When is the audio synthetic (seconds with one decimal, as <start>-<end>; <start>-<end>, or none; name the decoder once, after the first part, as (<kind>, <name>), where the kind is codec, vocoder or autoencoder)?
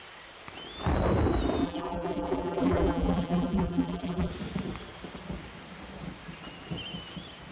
1.6-4.3 (vocoder, BigVGAN v2)